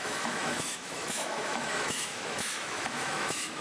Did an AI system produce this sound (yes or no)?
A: yes